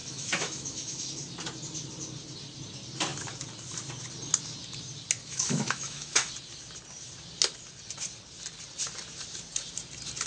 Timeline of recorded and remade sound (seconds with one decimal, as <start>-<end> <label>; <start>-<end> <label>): 0.0-1.1 remade; 1.1-5.2 recorded; 5.2-6.3 remade; 6.3-10.3 recorded